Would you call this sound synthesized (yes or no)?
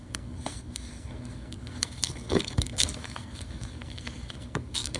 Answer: yes